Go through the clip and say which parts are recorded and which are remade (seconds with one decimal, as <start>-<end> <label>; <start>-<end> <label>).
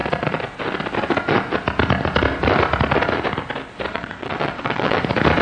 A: 0.0-3.9 recorded; 3.9-5.0 remade; 5.0-5.4 recorded